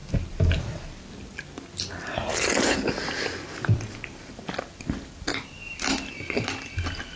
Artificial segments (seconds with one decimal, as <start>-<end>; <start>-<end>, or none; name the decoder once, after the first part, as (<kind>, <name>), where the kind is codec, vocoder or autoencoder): 1.9-7.2 (vocoder, BigVGAN v2)